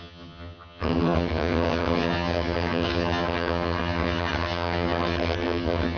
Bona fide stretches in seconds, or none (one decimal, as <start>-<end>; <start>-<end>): none